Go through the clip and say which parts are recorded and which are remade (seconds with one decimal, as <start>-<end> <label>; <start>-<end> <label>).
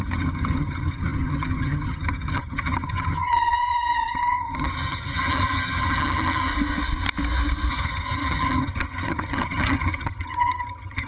0.0-6.5 remade; 6.5-7.7 recorded; 7.7-11.1 remade